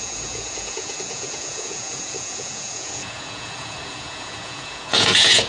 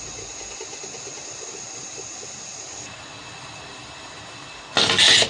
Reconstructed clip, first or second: first